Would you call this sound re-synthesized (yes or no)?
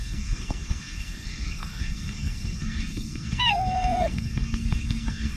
yes